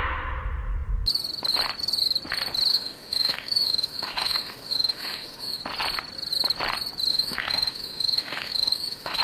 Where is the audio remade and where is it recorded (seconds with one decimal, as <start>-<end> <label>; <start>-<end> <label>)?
0.0-2.7 recorded; 2.7-5.6 remade; 5.6-7.1 recorded; 7.1-9.2 remade